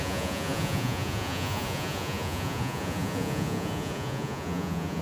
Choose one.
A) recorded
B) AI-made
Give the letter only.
B